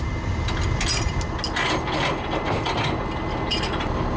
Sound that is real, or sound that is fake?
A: real